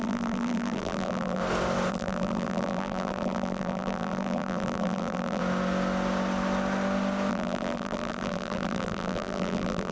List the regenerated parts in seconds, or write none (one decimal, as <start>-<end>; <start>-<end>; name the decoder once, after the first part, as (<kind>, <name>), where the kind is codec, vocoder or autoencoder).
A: 0.0-1.4 (vocoder, BigVGAN v2); 1.9-5.4; 7.3-9.9